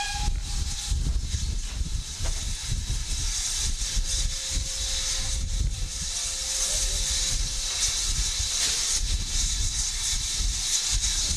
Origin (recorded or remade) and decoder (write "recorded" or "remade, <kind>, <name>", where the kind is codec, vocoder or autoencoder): remade, vocoder, BigVGAN v2